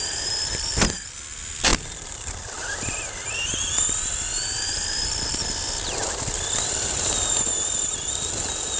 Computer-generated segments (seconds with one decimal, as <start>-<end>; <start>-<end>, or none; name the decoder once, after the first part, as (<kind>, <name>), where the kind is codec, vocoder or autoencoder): none